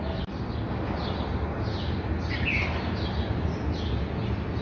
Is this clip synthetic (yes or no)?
no